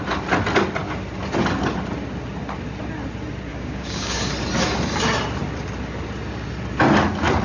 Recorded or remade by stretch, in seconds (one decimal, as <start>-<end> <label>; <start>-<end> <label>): 0.0-3.5 recorded; 3.5-4.3 remade; 4.3-7.4 recorded